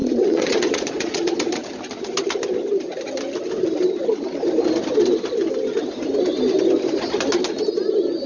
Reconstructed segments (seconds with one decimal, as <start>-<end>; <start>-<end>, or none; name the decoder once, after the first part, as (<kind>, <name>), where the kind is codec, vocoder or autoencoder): 0.0-1.6 (vocoder, Vocos)